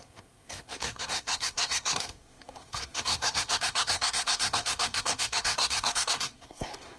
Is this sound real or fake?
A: fake